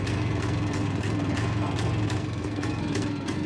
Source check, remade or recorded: remade